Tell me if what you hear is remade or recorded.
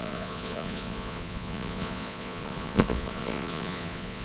remade